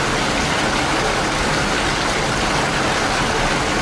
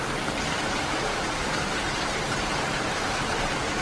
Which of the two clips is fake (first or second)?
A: second